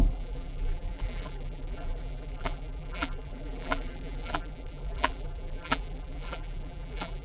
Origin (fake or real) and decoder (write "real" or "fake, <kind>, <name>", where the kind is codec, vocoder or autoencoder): fake, vocoder, BigVGAN v2